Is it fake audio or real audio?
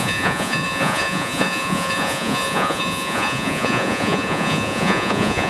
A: fake